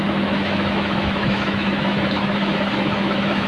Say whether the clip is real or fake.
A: fake